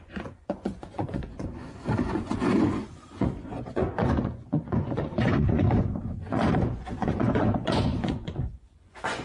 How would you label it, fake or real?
fake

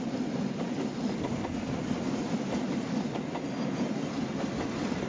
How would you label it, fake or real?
real